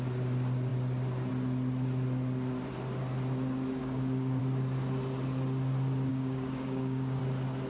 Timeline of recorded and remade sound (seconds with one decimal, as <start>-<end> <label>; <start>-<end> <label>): 0.0-3.8 recorded; 3.8-4.4 remade; 4.4-6.1 recorded; 6.1-7.2 remade; 7.2-7.7 recorded